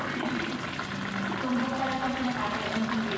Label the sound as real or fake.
real